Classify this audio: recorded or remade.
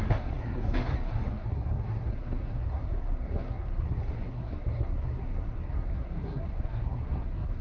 remade